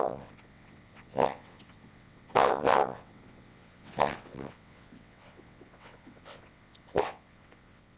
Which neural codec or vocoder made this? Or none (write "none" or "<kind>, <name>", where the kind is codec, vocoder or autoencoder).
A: vocoder, WaveNeXt